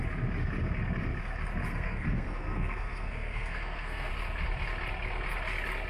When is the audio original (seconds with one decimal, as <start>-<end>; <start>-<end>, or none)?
0.0-1.6; 4.1-5.9